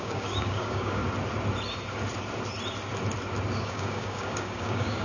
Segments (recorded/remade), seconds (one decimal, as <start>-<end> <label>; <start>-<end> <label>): 0.0-1.0 remade; 1.0-3.6 recorded; 3.6-5.0 remade